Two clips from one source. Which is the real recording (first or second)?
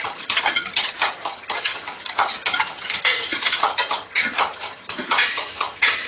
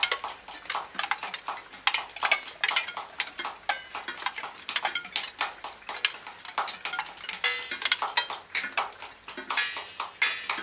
second